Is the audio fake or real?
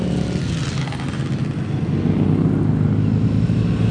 real